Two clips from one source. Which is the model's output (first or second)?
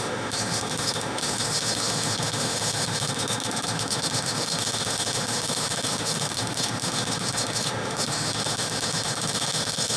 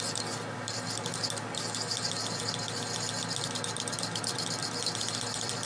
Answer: first